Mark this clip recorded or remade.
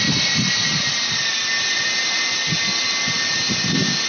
recorded